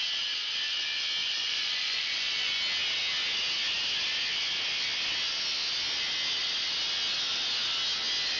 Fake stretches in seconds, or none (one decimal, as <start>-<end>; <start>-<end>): 1.2-2.6